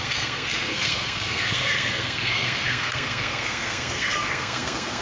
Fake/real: fake